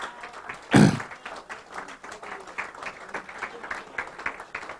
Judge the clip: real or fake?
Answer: real